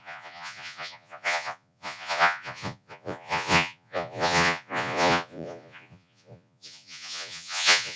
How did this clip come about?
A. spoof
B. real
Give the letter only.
A